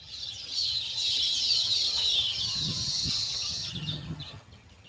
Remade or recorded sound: remade